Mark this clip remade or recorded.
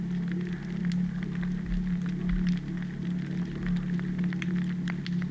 recorded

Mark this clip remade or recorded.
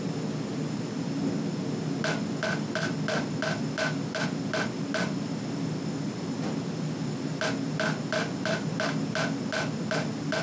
recorded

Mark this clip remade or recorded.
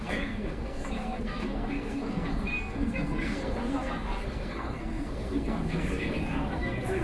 remade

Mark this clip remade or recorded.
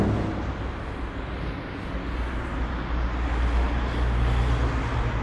recorded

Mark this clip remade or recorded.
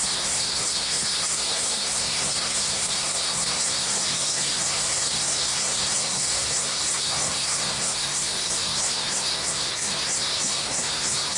remade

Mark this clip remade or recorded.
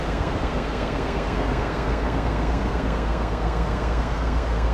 remade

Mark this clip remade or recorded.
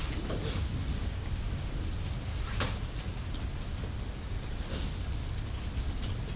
recorded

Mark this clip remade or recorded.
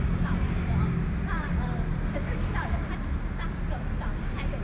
recorded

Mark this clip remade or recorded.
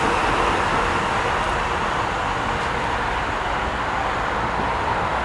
recorded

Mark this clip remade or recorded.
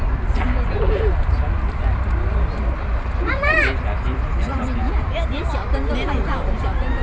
remade